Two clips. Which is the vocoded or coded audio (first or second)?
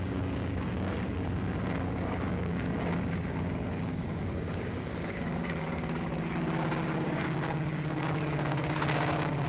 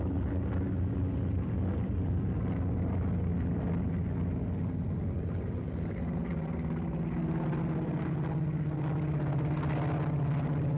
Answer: first